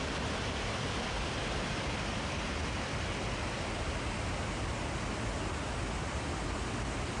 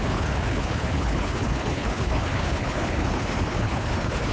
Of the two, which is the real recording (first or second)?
first